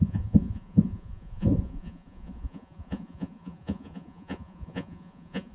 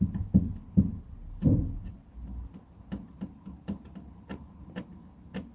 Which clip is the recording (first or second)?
second